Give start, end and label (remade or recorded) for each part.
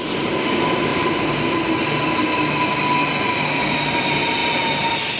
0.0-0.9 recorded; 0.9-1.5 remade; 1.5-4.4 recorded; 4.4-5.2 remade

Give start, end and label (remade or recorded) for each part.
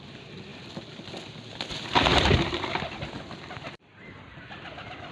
0.0-2.1 recorded; 2.1-5.1 remade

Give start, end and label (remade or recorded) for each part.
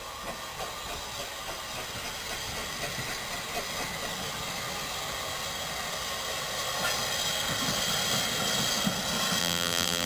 0.0-9.4 recorded; 9.4-10.1 remade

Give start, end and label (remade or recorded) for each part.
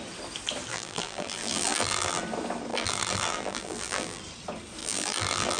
0.0-0.7 recorded; 0.7-2.2 remade; 2.2-2.7 recorded; 2.7-4.2 remade; 4.2-4.8 recorded; 4.8-5.6 remade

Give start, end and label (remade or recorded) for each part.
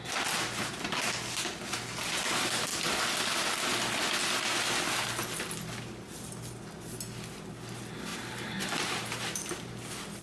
0.0-8.1 recorded; 8.1-9.7 remade; 9.7-10.2 recorded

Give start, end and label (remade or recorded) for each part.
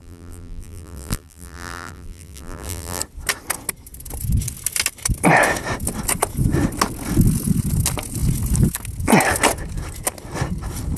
0.0-3.0 remade; 3.0-11.0 recorded